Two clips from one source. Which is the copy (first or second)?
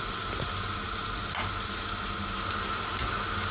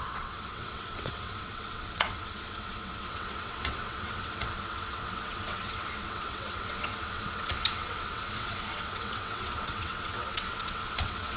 second